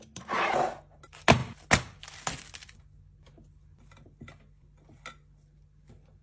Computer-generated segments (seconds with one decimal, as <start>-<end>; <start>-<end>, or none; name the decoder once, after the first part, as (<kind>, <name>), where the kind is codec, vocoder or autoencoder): none